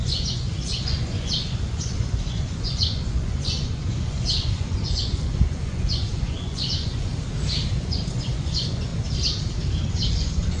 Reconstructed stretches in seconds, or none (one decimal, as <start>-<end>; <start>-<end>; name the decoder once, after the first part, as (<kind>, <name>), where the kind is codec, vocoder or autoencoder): 0.0-7.1 (vocoder, Vocos); 7.7-8.9; 9.9-10.6